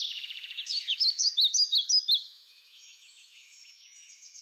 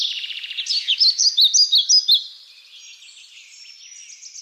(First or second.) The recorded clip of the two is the second